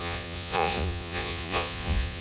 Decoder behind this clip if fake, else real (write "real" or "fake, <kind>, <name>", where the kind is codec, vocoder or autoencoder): fake, vocoder, Vocos